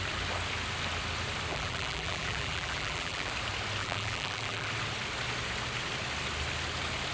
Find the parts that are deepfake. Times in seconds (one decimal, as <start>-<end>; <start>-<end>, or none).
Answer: 1.5-3.3; 3.8-4.7